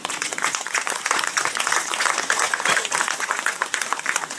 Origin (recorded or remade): remade